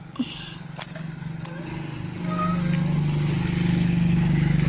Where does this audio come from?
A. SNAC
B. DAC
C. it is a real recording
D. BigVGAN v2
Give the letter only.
C